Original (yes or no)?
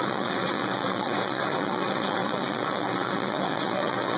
no